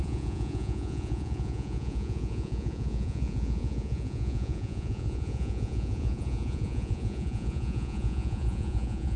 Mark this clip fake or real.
fake